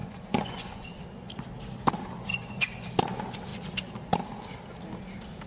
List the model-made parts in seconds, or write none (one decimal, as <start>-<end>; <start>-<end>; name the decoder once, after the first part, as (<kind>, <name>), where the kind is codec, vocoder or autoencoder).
0.0-0.9 (vocoder, Vocos); 2.3-2.9

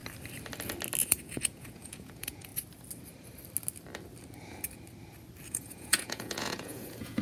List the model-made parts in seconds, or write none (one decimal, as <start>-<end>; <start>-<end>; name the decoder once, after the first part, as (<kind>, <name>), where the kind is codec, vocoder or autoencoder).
1.0-2.5 (vocoder, Vocos); 5.5-7.2

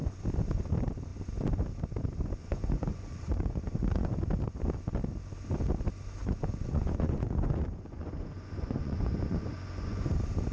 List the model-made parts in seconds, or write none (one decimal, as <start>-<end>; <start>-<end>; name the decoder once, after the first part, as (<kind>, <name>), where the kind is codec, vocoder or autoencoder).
2.4-4.1 (vocoder, Vocos); 6.2-10.1